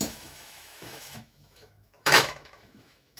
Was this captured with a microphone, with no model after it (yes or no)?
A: no